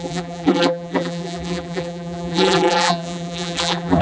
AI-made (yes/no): yes